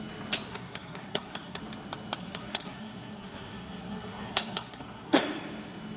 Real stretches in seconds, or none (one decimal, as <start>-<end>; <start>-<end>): 0.0-0.5; 1.6-2.2; 5.2-6.0